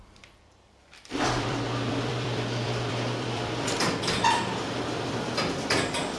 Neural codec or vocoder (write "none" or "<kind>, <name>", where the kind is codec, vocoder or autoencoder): vocoder, BigVGAN v2